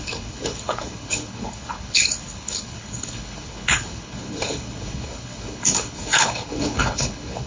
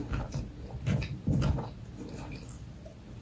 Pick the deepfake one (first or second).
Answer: first